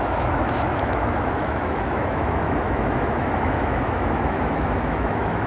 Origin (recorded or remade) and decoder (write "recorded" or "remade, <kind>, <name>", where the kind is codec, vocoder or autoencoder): remade, autoencoder, DAC-VAE